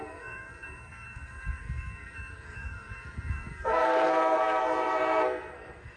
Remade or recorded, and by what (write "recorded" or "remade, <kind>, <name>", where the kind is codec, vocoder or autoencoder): remade, codec, SNAC